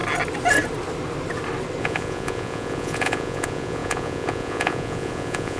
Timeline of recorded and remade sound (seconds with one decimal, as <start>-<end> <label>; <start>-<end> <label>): 0.0-1.8 recorded; 1.8-5.6 remade